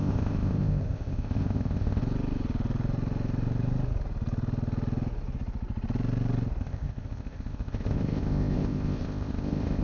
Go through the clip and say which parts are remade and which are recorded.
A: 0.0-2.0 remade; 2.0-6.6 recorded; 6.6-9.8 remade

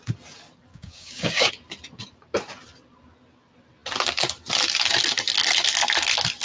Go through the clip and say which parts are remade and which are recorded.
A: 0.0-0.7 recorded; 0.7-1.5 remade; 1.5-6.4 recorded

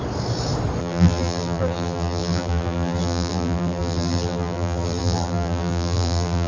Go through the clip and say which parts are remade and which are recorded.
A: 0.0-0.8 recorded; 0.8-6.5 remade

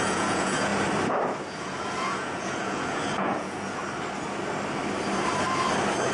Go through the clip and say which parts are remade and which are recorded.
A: 0.0-0.7 remade; 0.7-1.6 recorded; 1.6-3.8 remade; 3.8-6.1 recorded